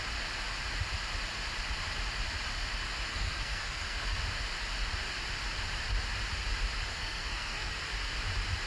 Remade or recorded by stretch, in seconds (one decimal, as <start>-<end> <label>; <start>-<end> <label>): 0.0-3.1 recorded; 3.1-4.2 remade; 4.2-6.9 recorded; 6.9-7.7 remade; 7.7-8.7 recorded